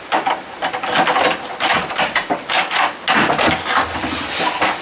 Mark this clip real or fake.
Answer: real